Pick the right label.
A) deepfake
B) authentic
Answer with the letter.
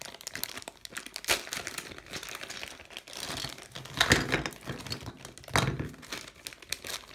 B